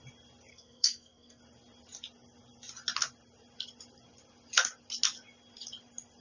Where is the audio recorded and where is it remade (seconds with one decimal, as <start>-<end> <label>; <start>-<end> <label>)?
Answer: 0.0-0.5 recorded; 0.5-1.4 remade; 1.4-6.2 recorded